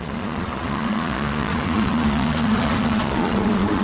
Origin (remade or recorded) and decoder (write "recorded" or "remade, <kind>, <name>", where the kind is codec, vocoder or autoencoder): remade, vocoder, Vocos